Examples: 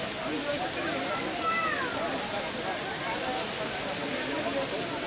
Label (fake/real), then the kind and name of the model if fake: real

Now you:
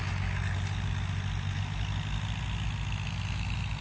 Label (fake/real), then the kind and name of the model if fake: real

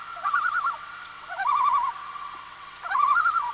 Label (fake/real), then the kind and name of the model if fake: fake, vocoder, WaveNeXt